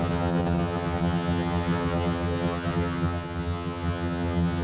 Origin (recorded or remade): remade